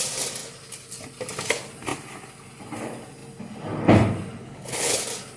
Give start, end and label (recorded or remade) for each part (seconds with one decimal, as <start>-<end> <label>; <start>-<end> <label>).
0.0-4.4 recorded; 4.4-5.0 remade; 5.0-5.4 recorded

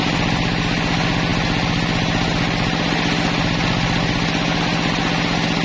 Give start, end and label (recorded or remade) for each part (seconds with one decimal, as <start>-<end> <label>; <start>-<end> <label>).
0.0-5.6 recorded

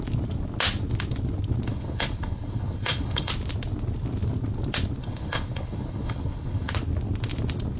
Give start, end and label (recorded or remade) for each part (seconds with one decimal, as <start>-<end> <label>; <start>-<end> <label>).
0.0-1.7 recorded; 1.7-3.3 remade; 3.3-5.0 recorded; 5.0-6.7 remade; 6.7-7.8 recorded

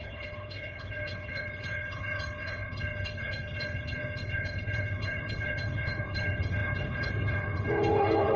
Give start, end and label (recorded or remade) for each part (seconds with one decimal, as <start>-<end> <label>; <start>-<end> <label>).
0.0-8.4 remade

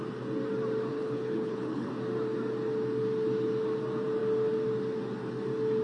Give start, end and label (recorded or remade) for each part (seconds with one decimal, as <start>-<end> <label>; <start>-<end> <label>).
0.0-0.9 recorded; 0.9-1.9 remade; 1.9-5.8 recorded

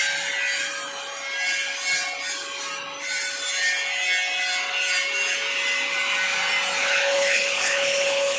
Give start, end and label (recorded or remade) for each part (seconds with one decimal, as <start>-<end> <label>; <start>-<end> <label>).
0.0-6.8 recorded; 6.8-8.4 remade